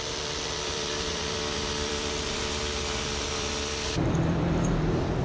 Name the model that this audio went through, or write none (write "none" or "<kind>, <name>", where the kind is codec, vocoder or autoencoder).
vocoder, BigVGAN v2